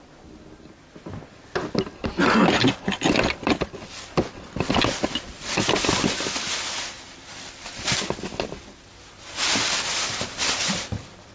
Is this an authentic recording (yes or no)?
yes